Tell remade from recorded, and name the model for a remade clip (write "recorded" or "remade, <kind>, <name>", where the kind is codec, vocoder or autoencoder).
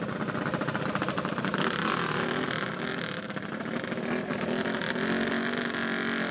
recorded